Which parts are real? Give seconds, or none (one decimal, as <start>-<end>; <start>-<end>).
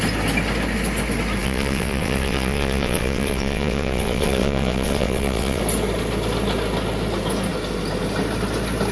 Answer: 0.0-1.4; 5.6-8.9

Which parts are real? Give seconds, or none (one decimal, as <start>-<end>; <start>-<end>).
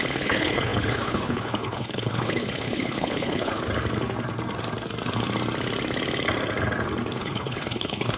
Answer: 3.6-7.2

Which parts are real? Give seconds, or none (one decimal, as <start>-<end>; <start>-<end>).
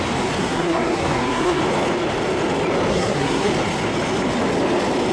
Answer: 0.0-0.4; 1.6-2.9; 3.5-5.1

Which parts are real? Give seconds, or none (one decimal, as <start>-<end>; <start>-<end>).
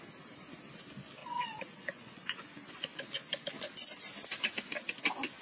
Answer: 0.0-1.2; 3.0-5.4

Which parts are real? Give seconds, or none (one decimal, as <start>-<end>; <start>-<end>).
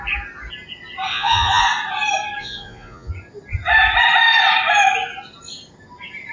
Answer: 0.0-1.1; 1.6-2.4; 3.1-6.3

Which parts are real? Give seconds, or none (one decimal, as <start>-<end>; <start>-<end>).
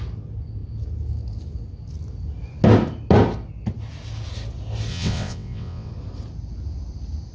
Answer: 0.0-4.9; 5.9-7.3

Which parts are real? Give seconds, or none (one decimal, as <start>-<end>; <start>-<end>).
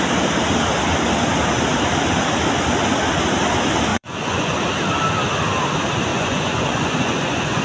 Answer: 0.0-3.9; 4.6-6.1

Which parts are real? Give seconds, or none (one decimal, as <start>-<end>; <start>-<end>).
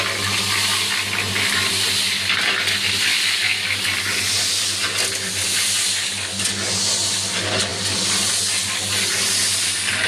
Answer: 0.0-10.1